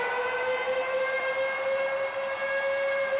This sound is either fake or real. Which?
real